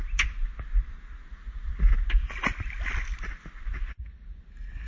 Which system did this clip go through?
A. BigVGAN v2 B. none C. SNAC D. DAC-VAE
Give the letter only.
B